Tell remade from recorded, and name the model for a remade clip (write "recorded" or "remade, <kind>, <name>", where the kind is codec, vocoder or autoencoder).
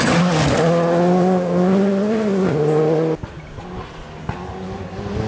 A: recorded